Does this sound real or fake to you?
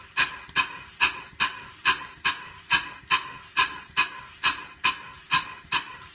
real